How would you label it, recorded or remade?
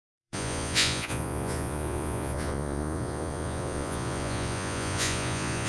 remade